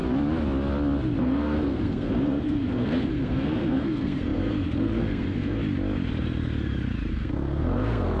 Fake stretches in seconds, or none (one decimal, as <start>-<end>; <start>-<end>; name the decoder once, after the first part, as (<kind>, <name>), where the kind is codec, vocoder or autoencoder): 1.2-5.6 (codec, SNAC); 7.1-8.2